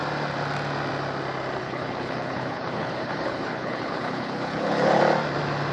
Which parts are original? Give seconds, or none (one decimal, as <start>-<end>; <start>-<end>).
0.0-1.6; 5.0-5.7